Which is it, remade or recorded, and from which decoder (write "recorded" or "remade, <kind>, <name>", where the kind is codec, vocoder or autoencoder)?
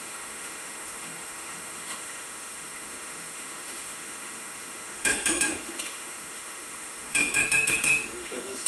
remade, autoencoder, DAC-VAE